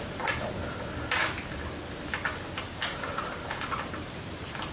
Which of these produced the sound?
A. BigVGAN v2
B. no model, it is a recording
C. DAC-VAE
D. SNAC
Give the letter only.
B